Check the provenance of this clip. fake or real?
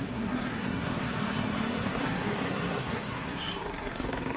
fake